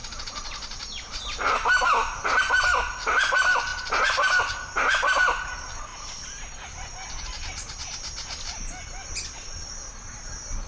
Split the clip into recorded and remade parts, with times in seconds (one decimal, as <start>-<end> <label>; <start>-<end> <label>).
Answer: 0.0-1.2 remade; 1.2-3.7 recorded; 3.7-4.4 remade; 4.4-10.7 recorded